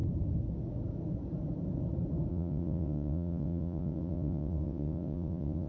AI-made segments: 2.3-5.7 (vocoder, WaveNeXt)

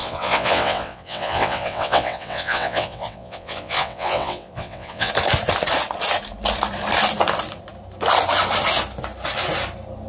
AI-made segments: 0.0-5.1 (vocoder, WaveNeXt)

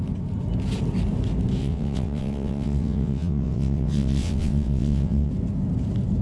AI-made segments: 1.6-5.3 (vocoder, WaveNeXt)

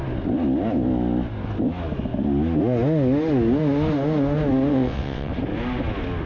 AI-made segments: 4.7-5.3 (vocoder, WaveNeXt)

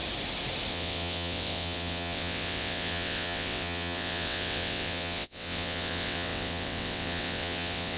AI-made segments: 0.7-8.0 (vocoder, WaveNeXt)

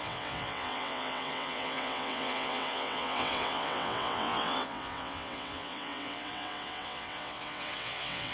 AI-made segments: 0.0-8.3 (vocoder, WaveNeXt)